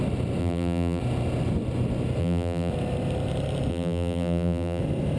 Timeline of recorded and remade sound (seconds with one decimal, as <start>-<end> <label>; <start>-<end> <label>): 0.0-0.4 recorded; 0.4-1.0 remade; 1.0-2.2 recorded; 2.2-2.7 remade; 2.7-3.7 recorded; 3.7-4.8 remade; 4.8-5.2 recorded